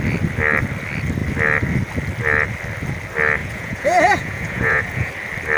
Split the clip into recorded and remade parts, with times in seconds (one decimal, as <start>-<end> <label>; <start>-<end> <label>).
0.0-3.4 recorded; 3.4-5.1 remade; 5.1-5.6 recorded